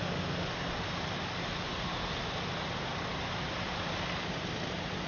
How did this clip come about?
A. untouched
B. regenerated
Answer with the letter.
A